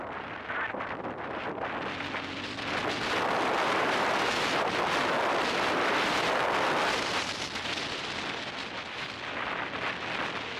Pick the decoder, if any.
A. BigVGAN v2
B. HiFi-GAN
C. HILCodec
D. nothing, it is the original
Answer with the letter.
D